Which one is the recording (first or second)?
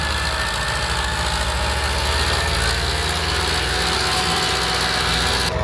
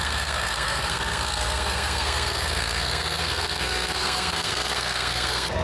first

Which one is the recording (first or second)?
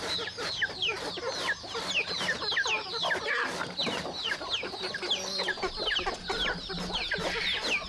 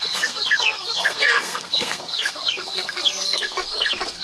first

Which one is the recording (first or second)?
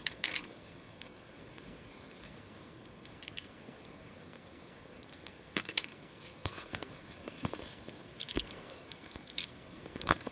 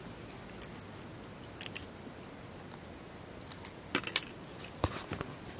second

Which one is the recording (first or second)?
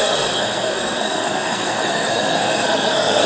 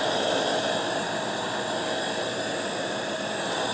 second